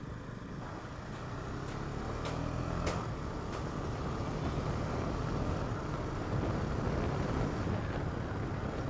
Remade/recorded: recorded